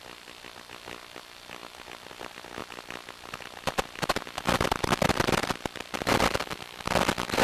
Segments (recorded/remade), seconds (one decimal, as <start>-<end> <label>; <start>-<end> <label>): 0.0-7.4 remade